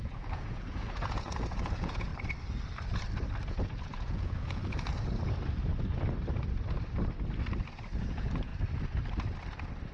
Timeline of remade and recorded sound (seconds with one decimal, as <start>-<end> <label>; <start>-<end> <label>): 0.0-2.1 remade; 2.1-3.5 recorded; 3.5-4.6 remade; 4.6-8.0 recorded; 8.0-8.5 remade; 8.5-9.9 recorded